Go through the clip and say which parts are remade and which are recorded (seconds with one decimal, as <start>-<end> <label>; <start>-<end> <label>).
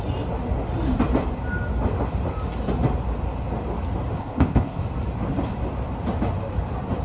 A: 0.0-4.2 recorded; 4.2-4.8 remade; 4.8-7.0 recorded